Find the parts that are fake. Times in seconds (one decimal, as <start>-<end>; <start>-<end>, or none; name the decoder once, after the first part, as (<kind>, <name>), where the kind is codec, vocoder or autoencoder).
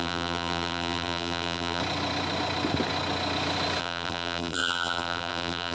0.0-1.8 (vocoder, BigVGAN v2); 3.8-5.7